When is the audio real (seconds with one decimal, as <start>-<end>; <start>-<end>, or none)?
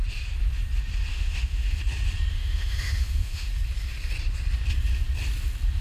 0.0-1.1; 1.8-2.3; 3.5-5.8